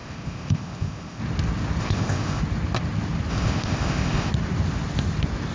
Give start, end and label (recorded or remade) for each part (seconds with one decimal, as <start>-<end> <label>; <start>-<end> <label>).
0.0-1.2 remade; 1.2-1.8 recorded; 1.8-2.4 remade; 2.4-3.3 recorded; 3.3-4.3 remade; 4.3-5.5 recorded